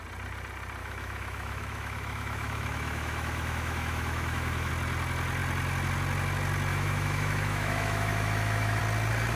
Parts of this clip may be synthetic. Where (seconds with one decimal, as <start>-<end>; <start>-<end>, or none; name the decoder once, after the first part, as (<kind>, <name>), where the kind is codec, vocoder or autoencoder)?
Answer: 0.8-4.7 (autoencoder, DAC-VAE); 6.7-8.8